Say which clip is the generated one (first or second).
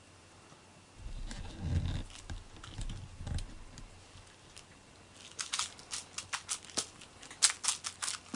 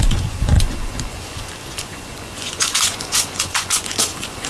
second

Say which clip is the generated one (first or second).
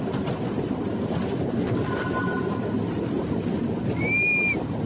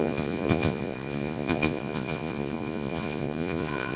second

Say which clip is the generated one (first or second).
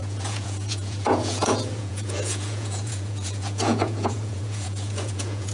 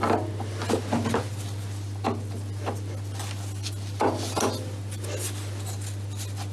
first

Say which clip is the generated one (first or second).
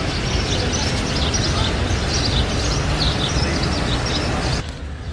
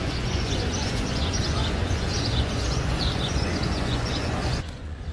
second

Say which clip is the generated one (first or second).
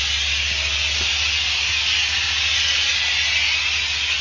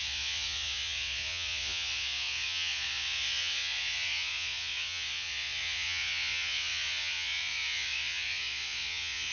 second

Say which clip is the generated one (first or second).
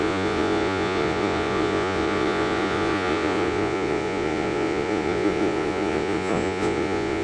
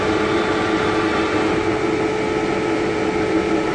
first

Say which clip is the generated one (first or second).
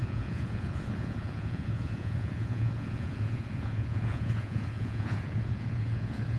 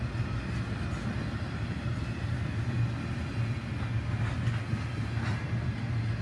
first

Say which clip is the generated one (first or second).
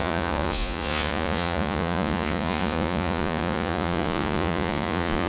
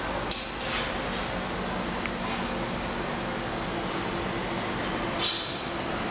first